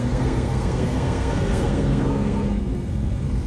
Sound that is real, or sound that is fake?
fake